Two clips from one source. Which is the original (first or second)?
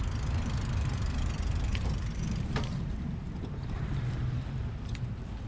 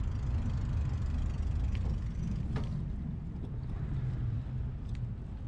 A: second